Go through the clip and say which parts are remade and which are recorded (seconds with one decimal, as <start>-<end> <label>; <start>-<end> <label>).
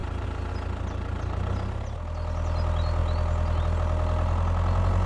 0.0-5.1 recorded